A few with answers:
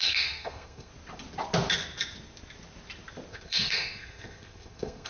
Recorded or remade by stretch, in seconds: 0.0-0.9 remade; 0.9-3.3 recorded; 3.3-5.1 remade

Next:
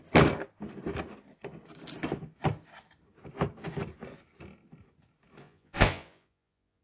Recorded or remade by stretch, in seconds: 0.0-5.4 recorded; 5.4-6.8 remade

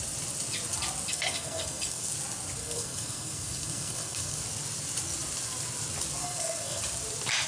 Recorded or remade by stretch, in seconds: 0.0-1.1 recorded; 1.1-2.1 remade; 2.1-2.6 recorded; 2.6-4.4 remade; 4.4-6.2 recorded; 6.2-6.8 remade; 6.8-7.5 recorded